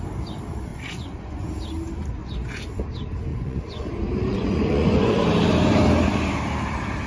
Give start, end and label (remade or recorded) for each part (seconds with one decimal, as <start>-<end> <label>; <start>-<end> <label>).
0.0-0.7 recorded; 0.7-1.5 remade; 1.5-2.2 recorded; 2.2-2.7 remade; 2.7-3.3 recorded; 3.3-3.9 remade; 3.9-4.3 recorded; 4.3-5.2 remade; 5.2-7.1 recorded